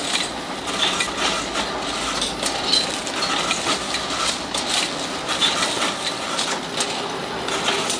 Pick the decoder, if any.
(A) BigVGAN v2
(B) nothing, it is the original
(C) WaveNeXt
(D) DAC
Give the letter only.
B